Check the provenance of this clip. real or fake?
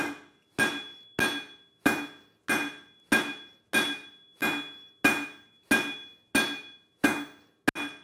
real